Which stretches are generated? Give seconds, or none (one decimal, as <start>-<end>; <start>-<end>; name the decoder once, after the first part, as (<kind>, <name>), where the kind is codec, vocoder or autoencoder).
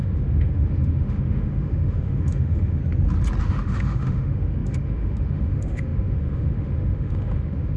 0.0-2.8 (autoencoder, DAC-VAE); 3.4-7.8